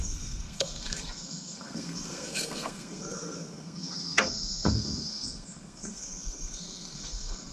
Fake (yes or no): yes